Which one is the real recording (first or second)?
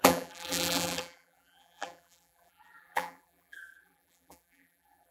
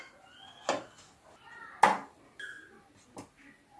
second